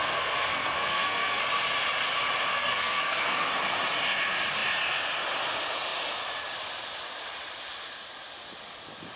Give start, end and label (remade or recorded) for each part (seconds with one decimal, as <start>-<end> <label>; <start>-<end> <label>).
0.0-1.4 remade; 1.4-2.5 recorded; 2.5-3.5 remade; 3.5-9.2 recorded